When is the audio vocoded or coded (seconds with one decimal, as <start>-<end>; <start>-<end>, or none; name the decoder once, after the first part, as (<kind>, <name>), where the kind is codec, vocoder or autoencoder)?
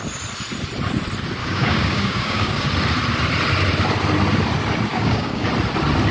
1.4-2.7 (codec, DAC); 4.9-5.5